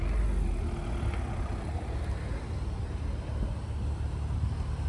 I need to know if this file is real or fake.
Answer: real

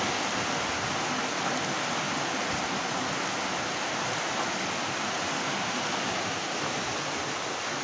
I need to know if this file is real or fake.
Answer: real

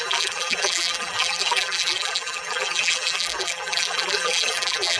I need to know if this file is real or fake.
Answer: fake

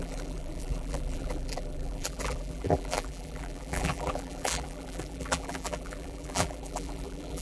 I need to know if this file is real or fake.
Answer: fake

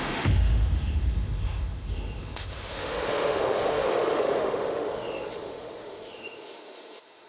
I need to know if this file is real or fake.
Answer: fake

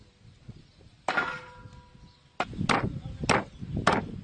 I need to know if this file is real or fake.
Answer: real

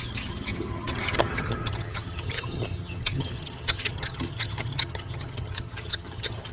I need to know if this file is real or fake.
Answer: fake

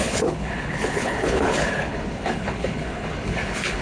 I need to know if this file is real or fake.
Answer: fake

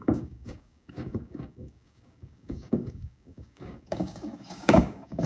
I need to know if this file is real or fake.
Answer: fake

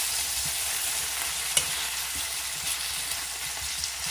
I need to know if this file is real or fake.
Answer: real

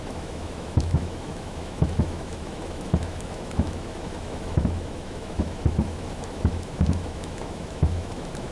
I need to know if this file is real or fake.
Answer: fake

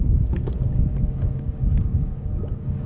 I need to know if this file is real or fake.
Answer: fake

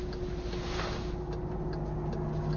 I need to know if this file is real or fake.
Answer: real